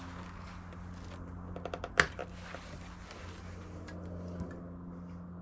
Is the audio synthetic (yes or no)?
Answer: no